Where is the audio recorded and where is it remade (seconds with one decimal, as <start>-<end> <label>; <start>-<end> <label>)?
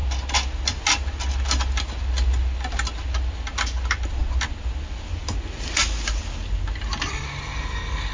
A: 0.0-8.1 recorded